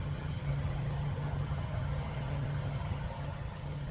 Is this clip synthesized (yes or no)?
yes